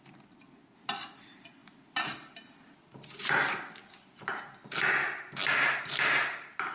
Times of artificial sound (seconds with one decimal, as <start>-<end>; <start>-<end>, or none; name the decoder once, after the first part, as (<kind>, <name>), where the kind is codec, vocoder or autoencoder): 3.8-4.4 (vocoder, BigVGAN v2)